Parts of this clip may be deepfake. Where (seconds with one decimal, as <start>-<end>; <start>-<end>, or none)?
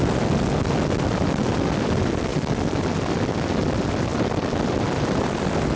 2.3-3.3; 4.1-5.8